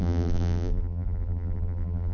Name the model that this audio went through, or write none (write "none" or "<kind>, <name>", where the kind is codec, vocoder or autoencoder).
vocoder, BigVGAN v2